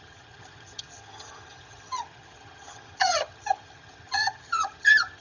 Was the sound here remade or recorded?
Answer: remade